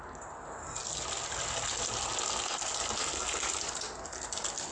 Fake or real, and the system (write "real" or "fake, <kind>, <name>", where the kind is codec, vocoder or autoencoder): real